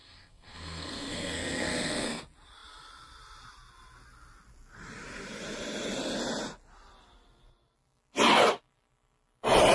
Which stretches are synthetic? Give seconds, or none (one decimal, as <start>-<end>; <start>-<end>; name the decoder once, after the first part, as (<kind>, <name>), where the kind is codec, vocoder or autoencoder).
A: 0.0-2.2 (codec, SNAC)